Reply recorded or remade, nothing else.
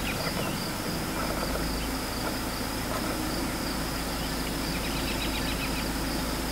recorded